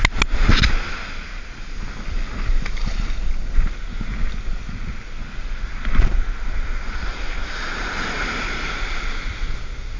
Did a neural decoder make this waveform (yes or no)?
no